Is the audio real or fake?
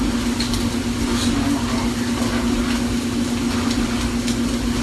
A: real